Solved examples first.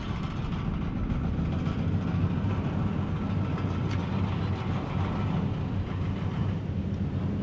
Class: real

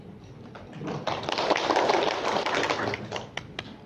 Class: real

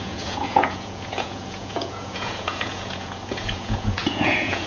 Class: fake